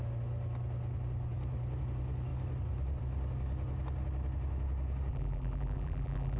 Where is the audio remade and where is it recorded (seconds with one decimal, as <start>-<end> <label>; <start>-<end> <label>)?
0.0-5.1 recorded; 5.1-6.4 remade